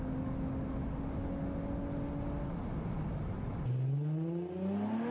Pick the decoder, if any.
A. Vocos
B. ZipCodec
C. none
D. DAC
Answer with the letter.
C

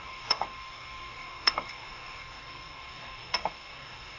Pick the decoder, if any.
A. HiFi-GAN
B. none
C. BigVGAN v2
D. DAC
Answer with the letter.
D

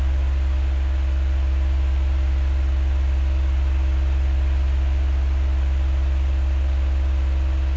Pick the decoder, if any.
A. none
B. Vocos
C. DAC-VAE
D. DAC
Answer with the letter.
A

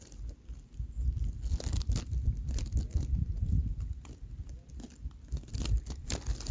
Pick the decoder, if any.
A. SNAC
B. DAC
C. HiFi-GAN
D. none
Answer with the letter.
D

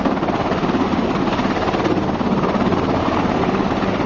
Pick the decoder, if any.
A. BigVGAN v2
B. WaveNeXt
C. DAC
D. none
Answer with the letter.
D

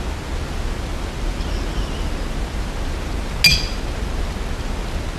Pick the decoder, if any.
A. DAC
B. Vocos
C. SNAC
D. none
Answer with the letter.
D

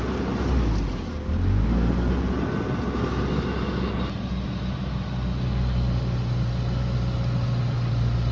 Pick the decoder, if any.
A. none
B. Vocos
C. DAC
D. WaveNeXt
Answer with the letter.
A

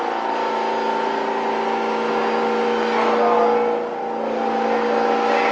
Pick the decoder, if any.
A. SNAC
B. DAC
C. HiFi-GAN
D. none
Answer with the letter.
D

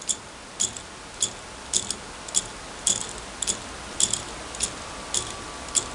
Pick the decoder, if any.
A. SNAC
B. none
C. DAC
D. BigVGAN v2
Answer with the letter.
B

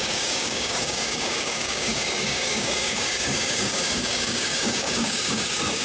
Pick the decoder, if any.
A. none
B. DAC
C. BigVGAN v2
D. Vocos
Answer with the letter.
B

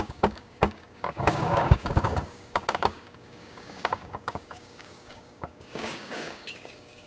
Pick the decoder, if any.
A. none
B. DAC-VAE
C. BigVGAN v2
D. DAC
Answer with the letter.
D